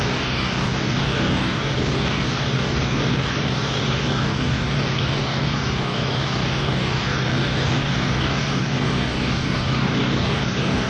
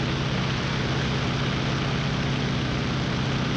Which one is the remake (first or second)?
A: first